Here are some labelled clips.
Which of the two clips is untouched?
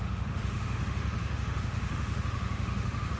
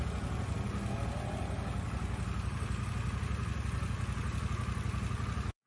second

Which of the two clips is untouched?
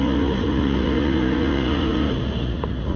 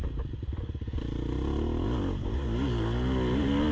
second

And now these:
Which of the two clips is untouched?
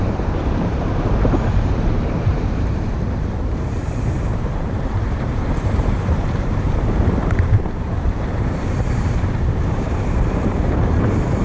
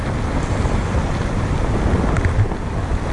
second